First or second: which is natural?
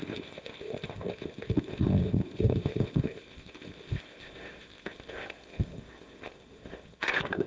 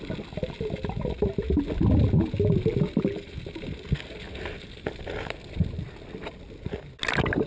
second